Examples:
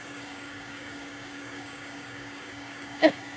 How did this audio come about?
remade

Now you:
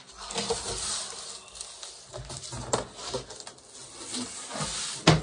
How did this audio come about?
recorded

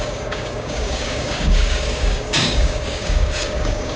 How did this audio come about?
remade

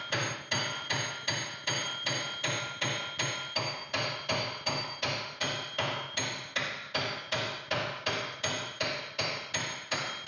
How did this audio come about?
recorded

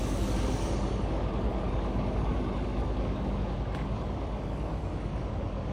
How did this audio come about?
remade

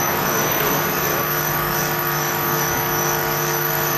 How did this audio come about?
remade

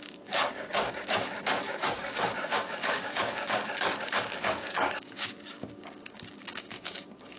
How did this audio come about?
remade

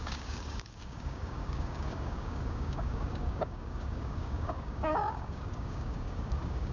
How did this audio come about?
remade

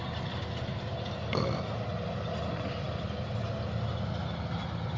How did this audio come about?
recorded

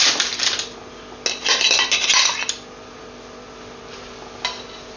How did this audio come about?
recorded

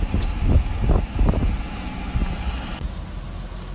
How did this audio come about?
recorded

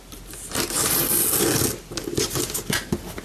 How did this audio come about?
recorded